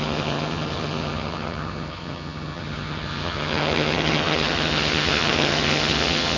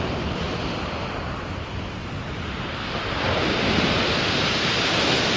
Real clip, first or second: second